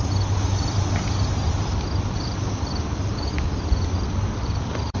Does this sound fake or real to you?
real